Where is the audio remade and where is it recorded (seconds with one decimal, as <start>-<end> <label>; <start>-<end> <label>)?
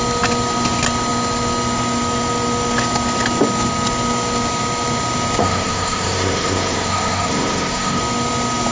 0.0-5.4 recorded; 5.4-8.0 remade; 8.0-8.7 recorded